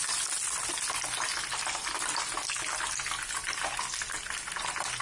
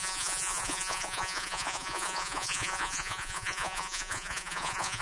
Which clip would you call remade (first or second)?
second